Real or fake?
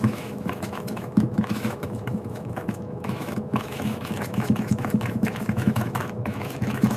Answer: fake